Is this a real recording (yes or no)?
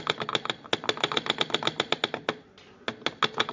yes